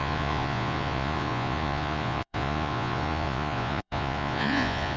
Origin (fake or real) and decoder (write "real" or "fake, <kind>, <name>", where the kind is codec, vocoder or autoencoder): fake, vocoder, Vocos